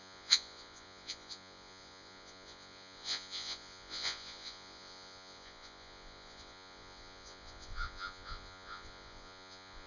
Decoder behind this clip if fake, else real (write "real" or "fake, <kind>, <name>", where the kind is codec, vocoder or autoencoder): fake, vocoder, Vocos